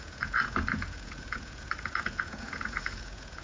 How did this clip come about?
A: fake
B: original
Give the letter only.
A